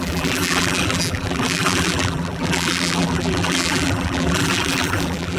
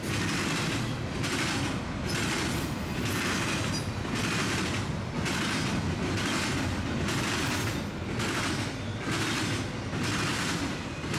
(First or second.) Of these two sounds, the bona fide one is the second